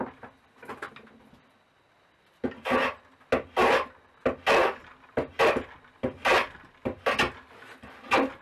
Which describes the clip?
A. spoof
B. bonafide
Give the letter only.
B